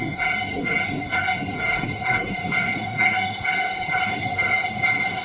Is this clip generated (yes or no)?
yes